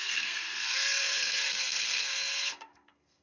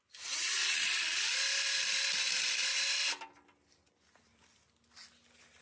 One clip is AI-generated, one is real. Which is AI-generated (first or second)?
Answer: first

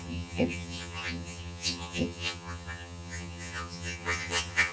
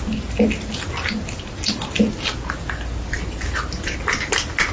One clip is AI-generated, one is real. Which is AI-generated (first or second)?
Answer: first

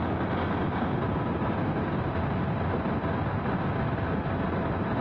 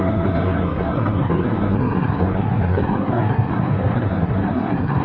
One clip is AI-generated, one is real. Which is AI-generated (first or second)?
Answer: second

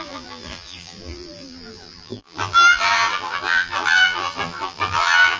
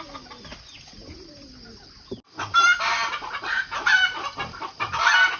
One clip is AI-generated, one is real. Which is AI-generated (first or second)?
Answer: first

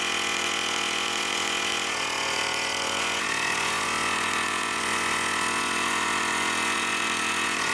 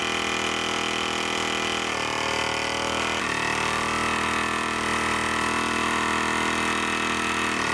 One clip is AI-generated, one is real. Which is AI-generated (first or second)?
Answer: first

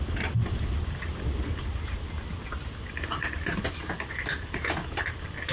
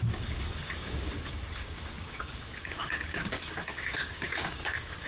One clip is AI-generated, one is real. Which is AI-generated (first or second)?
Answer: second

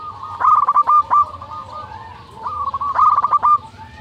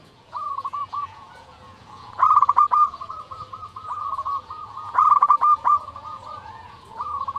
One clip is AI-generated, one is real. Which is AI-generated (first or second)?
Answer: second